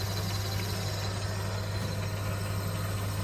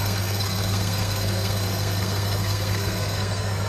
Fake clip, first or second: second